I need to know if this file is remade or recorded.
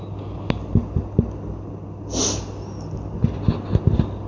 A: recorded